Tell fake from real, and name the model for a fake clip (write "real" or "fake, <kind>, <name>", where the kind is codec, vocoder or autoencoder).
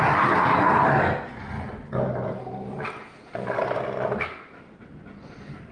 real